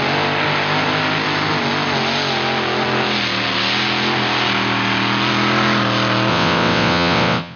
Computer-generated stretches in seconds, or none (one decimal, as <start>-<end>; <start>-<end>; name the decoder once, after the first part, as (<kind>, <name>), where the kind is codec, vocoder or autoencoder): 6.3-7.6 (vocoder, WaveNeXt)